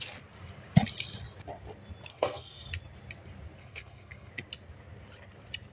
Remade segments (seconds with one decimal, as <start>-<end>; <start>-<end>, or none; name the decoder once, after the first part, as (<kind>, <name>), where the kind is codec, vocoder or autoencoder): 2.1-2.7 (codec, SNAC); 3.6-4.3